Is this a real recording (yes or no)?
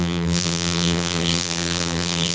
no